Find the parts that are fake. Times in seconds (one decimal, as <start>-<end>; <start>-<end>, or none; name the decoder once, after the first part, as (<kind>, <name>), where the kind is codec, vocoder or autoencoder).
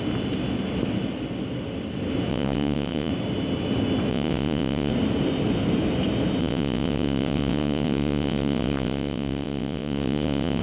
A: 2.3-3.1 (vocoder, WaveNeXt); 4.1-4.9; 6.4-10.6